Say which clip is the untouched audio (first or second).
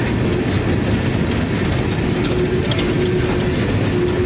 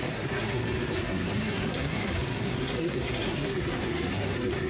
first